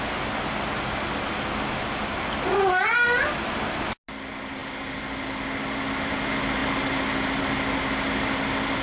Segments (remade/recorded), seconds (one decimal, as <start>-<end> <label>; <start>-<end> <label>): 0.0-8.8 recorded